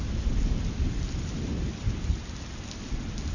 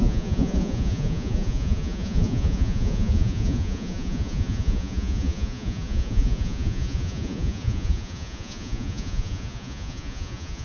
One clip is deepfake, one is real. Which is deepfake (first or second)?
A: second